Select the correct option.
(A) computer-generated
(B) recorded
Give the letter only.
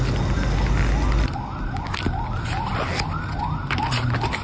B